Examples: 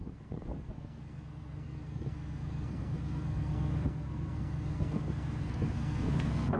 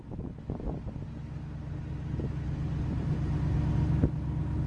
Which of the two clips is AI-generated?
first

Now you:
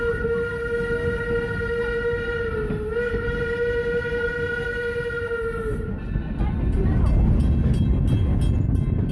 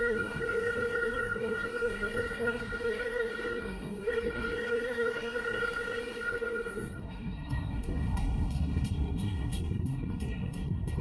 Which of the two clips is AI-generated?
second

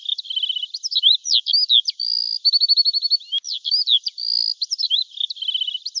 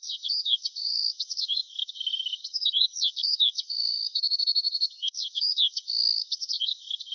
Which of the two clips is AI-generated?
second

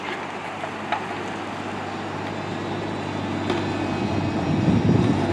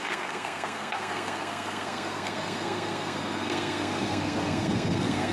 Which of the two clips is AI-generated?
second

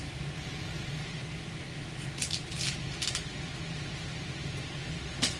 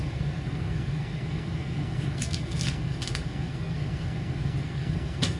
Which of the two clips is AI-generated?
second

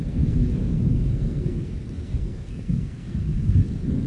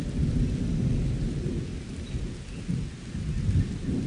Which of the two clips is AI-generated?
first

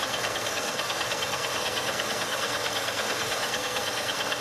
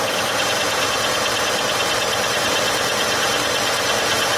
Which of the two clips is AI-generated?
first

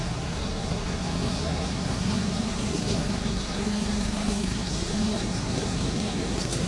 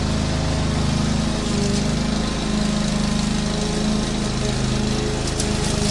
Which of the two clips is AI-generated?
first